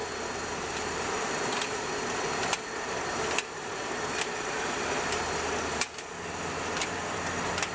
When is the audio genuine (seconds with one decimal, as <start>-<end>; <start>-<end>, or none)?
0.0-7.7